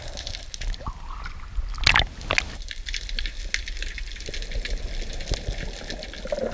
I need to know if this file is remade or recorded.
recorded